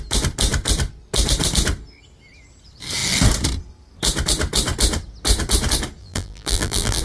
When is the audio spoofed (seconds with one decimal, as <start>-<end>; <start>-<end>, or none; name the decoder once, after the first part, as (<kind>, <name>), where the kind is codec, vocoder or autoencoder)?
6.0-7.0 (vocoder, BigVGAN v2)